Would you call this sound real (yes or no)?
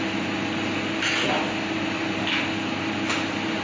yes